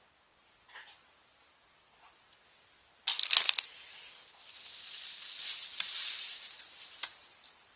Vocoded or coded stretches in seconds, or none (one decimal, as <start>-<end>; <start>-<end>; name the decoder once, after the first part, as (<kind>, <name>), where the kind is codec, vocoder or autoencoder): none